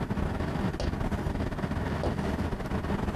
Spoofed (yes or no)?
no